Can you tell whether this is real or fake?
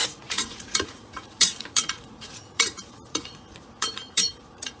fake